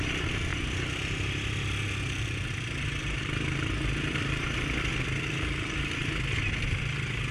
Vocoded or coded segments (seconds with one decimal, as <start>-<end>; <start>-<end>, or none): none